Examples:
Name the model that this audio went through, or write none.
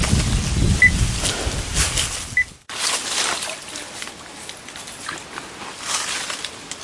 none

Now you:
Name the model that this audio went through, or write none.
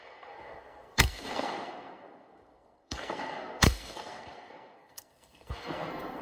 codec, SNAC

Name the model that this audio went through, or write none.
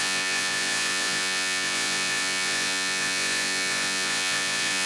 vocoder, Vocos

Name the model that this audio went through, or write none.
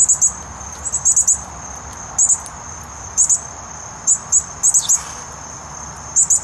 none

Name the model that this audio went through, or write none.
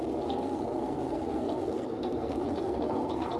codec, SNAC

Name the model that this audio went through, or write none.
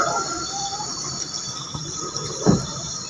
vocoder, BigVGAN v2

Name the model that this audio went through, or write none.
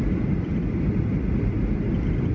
vocoder, BigVGAN v2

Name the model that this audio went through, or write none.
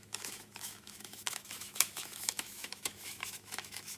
autoencoder, DAC-VAE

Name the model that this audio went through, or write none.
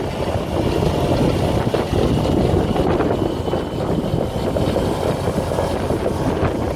none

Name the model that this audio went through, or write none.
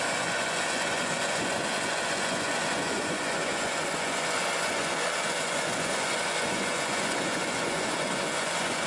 vocoder, Vocos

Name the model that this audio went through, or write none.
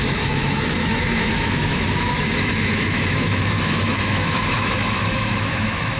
autoencoder, DAC-VAE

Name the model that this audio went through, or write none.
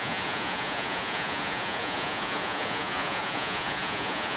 vocoder, Vocos